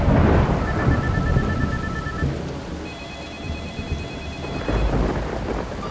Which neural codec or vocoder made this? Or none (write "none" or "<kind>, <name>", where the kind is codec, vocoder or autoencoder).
none